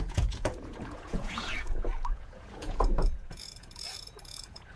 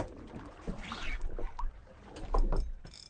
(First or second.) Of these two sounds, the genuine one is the second